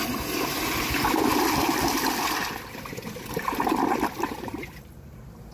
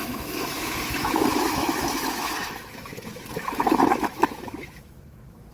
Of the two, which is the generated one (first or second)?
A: second